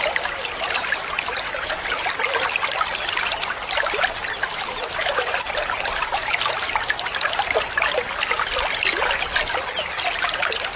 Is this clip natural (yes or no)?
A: yes